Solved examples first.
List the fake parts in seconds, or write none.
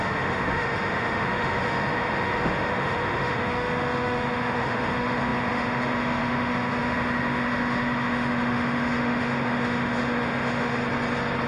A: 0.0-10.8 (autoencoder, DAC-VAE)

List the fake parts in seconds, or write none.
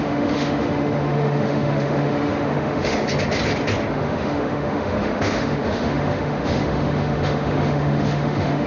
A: 0.0-3.0 (autoencoder, DAC-VAE); 3.9-8.7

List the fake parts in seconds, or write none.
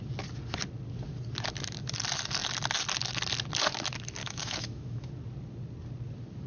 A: 4.2-5.1 (autoencoder, DAC-VAE)